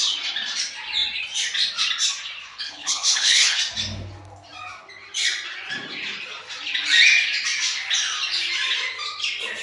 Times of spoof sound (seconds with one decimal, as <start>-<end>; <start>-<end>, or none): 2.5-3.6

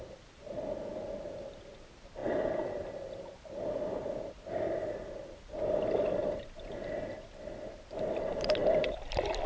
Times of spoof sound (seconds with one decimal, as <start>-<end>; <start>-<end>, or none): none

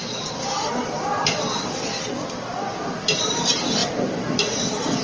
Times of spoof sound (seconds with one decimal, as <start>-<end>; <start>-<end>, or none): 0.0-1.1; 2.9-5.0

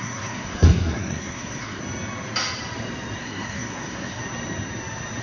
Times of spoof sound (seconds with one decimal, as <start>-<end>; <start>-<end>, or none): 0.0-1.8; 3.2-4.2

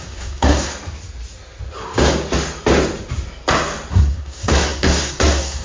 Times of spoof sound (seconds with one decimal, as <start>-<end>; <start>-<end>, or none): 0.0-0.7; 3.9-5.6

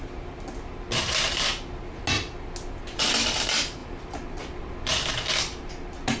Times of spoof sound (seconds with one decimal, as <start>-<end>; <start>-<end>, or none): none

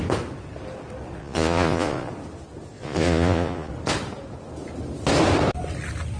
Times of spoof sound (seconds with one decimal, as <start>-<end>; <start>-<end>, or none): 1.2-2.1; 2.7-3.7